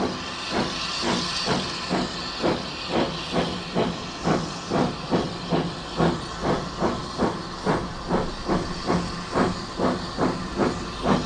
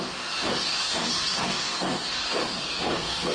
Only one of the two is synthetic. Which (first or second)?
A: second